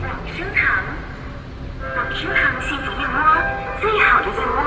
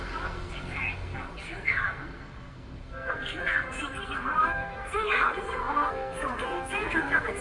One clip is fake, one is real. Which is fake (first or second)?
second